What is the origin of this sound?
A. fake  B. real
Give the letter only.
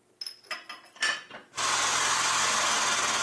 B